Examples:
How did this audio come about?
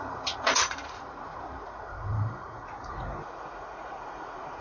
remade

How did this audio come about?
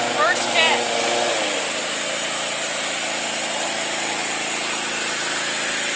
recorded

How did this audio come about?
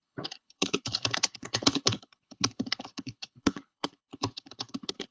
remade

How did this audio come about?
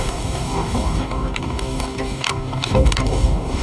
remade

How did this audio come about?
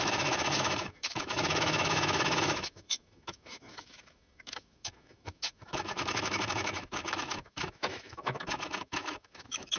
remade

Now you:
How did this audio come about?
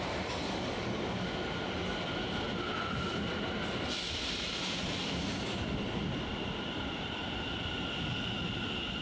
remade